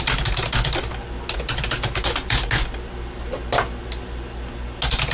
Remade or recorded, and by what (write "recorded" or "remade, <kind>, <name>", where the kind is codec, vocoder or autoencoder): recorded